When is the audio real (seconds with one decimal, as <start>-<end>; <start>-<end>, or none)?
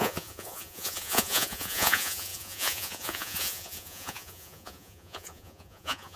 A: none